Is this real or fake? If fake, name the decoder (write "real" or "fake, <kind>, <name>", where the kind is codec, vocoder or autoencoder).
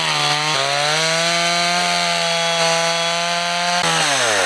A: real